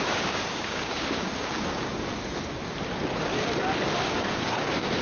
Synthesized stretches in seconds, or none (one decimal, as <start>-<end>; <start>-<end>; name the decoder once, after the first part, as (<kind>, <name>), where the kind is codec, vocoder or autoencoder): 0.0-2.1 (codec, DAC); 4.0-5.0

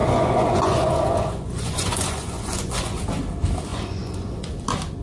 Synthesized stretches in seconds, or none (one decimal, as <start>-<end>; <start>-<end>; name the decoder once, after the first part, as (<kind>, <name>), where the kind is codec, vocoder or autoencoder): 0.0-3.0 (vocoder, Vocos); 3.7-4.5

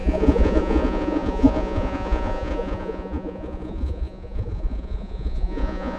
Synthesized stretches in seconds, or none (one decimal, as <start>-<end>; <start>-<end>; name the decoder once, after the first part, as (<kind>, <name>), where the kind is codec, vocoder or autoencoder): 0.0-6.0 (vocoder, Vocos)

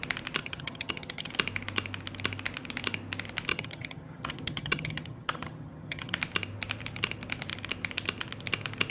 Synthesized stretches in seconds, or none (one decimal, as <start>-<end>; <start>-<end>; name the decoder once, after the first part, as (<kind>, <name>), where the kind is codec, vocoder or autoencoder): 0.4-1.3 (vocoder, HiFi-GAN); 3.5-6.1

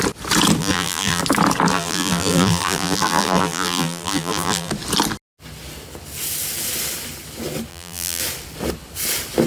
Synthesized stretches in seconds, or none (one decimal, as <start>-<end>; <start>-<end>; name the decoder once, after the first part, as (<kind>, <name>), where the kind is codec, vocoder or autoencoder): 0.6-1.2 (vocoder, BigVGAN v2); 1.7-4.7; 7.7-8.2

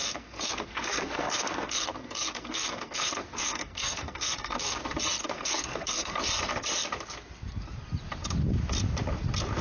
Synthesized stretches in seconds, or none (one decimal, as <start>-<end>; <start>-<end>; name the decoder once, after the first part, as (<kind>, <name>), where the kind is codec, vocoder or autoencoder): 0.0-4.8 (codec, SNAC); 5.2-6.2

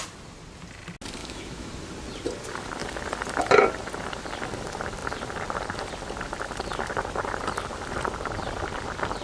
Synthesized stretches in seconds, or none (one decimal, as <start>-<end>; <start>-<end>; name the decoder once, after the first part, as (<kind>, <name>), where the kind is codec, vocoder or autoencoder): 1.2-1.7 (autoencoder, DAC-VAE)

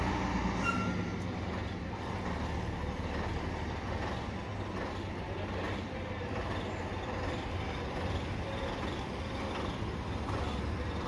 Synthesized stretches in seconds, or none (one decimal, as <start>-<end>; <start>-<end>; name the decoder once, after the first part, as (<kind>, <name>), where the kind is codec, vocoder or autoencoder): none